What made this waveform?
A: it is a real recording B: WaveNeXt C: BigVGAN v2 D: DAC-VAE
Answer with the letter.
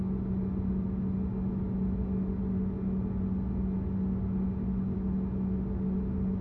A